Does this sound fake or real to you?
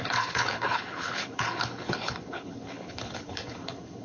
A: fake